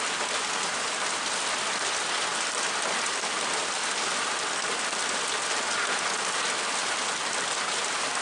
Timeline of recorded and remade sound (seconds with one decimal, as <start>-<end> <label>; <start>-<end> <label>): 0.0-2.3 recorded; 2.3-5.0 remade; 5.0-6.8 recorded; 6.8-7.6 remade; 7.6-8.2 recorded